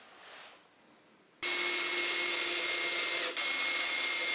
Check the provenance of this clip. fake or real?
real